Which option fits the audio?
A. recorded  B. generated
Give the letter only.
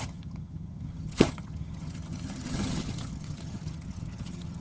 B